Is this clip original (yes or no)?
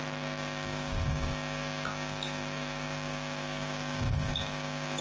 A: no